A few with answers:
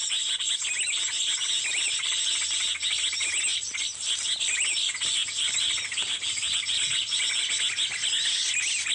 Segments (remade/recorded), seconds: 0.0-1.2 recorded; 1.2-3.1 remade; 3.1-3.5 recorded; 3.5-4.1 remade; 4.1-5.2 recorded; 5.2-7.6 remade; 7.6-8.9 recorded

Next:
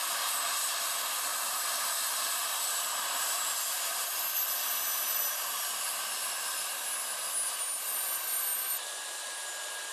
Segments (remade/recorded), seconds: 0.0-1.3 recorded; 1.3-5.7 remade; 5.7-9.9 recorded

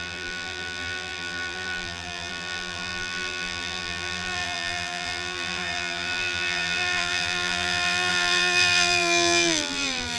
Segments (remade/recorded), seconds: 0.0-10.2 remade